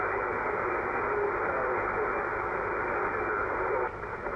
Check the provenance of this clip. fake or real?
real